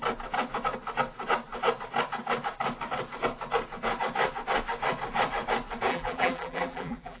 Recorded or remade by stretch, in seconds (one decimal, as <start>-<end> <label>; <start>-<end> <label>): 0.0-5.9 recorded; 5.9-7.2 remade